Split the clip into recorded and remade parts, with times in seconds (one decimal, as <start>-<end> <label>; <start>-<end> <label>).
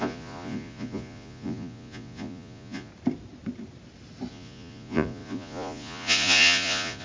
0.0-2.9 remade; 2.9-4.3 recorded; 4.3-7.0 remade